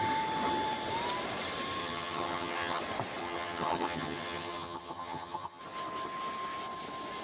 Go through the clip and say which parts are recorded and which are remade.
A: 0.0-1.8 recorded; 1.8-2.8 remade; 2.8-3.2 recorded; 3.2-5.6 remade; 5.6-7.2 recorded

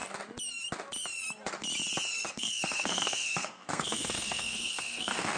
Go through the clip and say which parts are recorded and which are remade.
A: 0.0-2.3 recorded; 2.3-5.4 remade

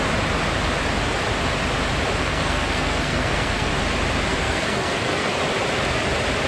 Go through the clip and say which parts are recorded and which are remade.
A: 0.0-2.2 recorded; 2.2-3.7 remade; 3.7-4.3 recorded; 4.3-5.4 remade; 5.4-6.5 recorded

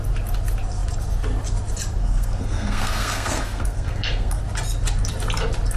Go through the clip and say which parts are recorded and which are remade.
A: 0.0-2.0 recorded; 2.0-4.4 remade; 4.4-5.8 recorded

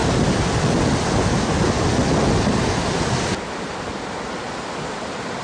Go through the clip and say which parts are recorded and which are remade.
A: 0.0-5.4 recorded

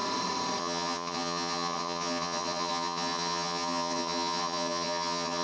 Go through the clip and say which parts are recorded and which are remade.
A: 0.0-0.6 recorded; 0.6-5.4 remade

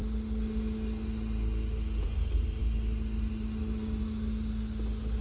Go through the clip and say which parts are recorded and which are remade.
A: 0.0-5.2 recorded